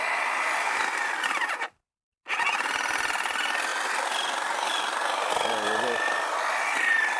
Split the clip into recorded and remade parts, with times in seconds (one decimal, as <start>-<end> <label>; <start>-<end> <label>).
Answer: 0.0-7.2 recorded